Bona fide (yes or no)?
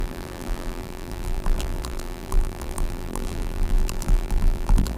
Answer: no